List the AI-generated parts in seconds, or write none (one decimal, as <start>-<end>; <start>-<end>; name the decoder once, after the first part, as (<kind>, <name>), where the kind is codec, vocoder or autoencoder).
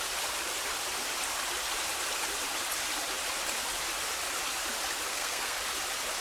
5.1-5.6 (codec, SNAC)